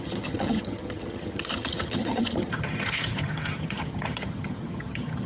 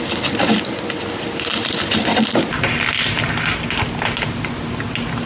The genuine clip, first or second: second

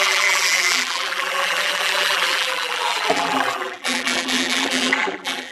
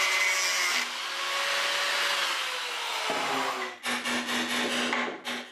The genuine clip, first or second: second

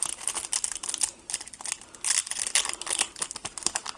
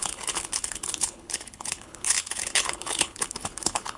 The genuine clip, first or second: first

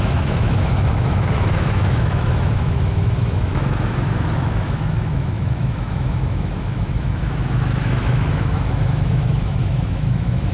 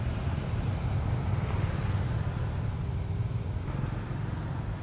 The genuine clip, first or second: second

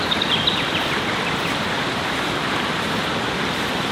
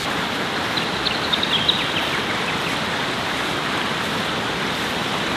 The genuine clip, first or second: second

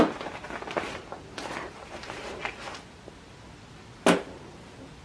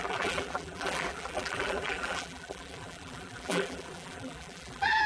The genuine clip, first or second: first